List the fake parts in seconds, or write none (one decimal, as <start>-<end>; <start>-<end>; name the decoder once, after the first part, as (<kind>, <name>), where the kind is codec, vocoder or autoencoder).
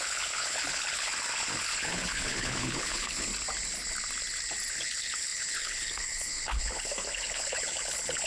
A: 0.0-1.1 (codec, HILCodec); 1.8-3.3; 4.7-8.3